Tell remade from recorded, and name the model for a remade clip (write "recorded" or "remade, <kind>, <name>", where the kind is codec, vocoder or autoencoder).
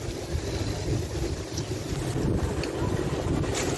recorded